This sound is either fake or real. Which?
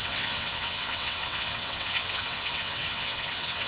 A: fake